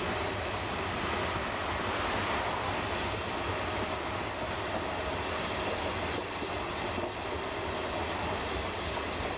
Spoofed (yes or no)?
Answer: no